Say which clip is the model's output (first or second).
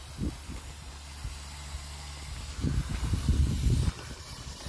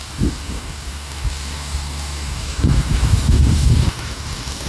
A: second